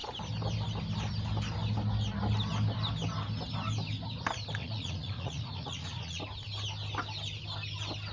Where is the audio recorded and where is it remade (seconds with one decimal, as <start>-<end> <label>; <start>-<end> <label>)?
0.0-4.6 recorded; 4.6-6.2 remade; 6.2-8.1 recorded